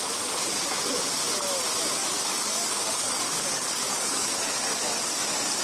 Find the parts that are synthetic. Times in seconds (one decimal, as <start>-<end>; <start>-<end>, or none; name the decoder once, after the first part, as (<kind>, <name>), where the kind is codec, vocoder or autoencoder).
2.0-4.2 (codec, DAC)